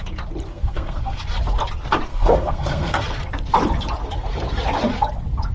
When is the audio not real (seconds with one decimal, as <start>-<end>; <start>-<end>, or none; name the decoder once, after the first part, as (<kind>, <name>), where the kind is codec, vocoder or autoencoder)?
0.5-1.2 (codec, SNAC); 2.1-3.0